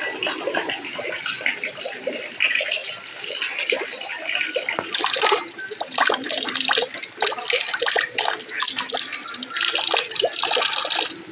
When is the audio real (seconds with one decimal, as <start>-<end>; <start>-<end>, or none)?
0.0-11.3